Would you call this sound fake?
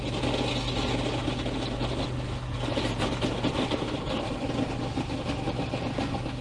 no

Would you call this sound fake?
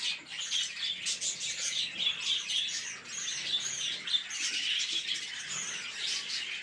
no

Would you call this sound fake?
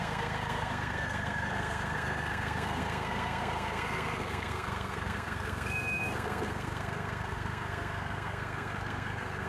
yes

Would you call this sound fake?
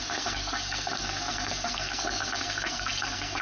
yes